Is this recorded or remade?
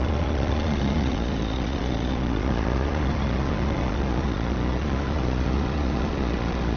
remade